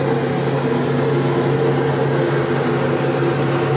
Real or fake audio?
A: real